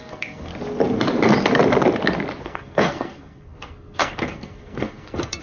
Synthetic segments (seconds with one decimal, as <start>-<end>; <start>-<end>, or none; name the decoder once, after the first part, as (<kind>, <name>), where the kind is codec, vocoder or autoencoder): 0.0-0.5 (codec, SNAC); 2.4-5.4